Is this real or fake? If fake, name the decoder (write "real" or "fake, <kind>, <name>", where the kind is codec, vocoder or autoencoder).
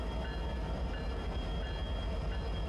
real